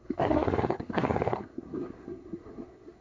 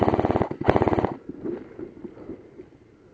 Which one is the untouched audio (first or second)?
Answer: second